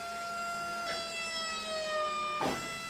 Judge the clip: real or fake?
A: real